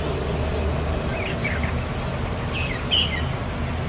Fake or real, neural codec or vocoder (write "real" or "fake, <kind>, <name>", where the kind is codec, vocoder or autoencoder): real